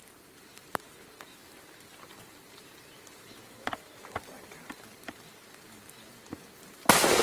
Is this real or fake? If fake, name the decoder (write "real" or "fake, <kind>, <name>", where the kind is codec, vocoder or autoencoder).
real